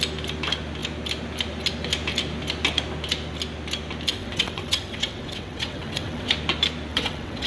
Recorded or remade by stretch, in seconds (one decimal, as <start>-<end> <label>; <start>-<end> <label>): 0.0-4.1 recorded; 4.1-6.3 remade; 6.3-6.9 recorded; 6.9-7.5 remade